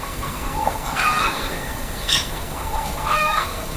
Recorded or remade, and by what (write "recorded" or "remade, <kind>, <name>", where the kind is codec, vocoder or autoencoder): remade, codec, SNAC